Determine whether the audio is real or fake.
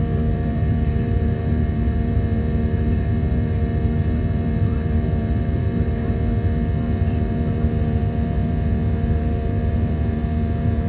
fake